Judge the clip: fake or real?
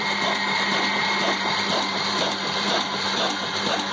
fake